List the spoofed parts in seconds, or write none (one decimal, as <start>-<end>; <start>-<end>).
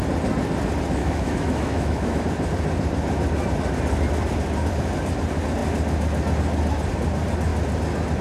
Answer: 1.0-2.2